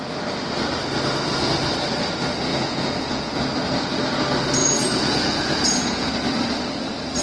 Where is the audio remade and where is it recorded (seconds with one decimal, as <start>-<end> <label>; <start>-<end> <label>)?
0.0-2.5 recorded; 2.5-3.4 remade; 3.4-4.6 recorded; 4.6-6.1 remade; 6.1-7.2 recorded